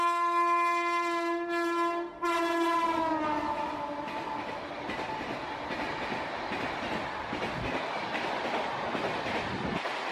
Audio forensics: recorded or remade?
recorded